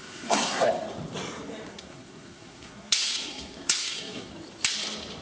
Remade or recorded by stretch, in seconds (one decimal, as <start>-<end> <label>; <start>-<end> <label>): 0.0-0.7 remade; 0.7-1.7 recorded; 1.7-4.3 remade; 4.3-5.2 recorded